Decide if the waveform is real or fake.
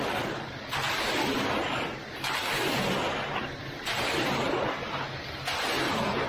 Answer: real